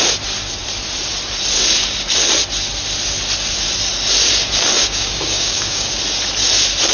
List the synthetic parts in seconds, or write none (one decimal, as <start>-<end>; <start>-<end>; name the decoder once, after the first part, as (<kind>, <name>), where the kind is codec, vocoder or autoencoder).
4.8-5.9 (codec, DAC)